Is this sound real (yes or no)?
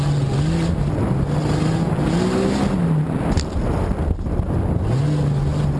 yes